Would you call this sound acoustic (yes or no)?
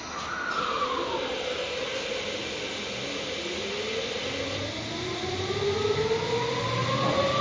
yes